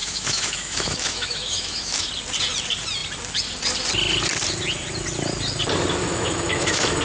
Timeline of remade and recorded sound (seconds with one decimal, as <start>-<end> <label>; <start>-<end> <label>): 0.0-2.1 remade; 2.1-6.0 recorded; 6.0-7.0 remade